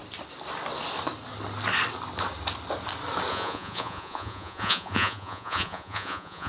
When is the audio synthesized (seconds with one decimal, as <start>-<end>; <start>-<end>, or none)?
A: 3.3-6.5